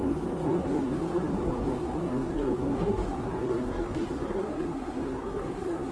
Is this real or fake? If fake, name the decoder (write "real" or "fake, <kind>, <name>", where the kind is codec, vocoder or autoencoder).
fake, codec, SNAC